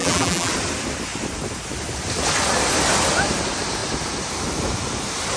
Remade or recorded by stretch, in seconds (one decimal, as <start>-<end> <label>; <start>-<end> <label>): 0.0-0.5 remade; 0.5-5.4 recorded